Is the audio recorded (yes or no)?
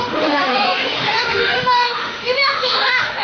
no